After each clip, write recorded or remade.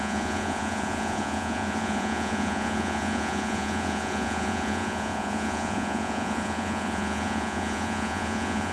remade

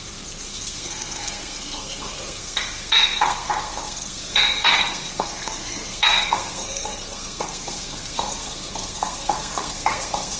remade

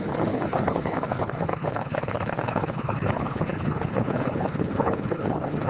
remade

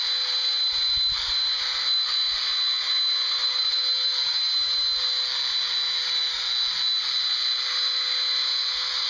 recorded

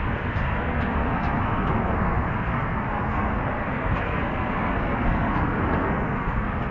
remade